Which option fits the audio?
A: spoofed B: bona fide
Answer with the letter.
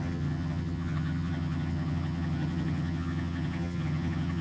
A